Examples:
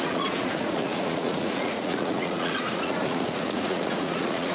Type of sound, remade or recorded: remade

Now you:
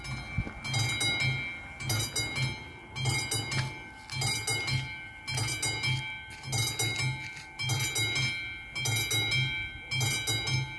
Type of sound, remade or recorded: recorded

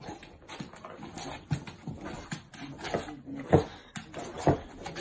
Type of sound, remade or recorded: recorded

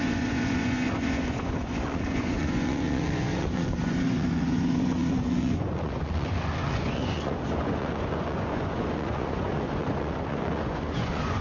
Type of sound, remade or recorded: remade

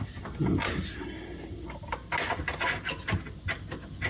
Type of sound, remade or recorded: recorded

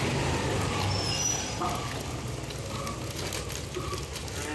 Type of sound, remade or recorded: recorded